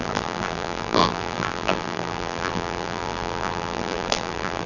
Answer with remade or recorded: remade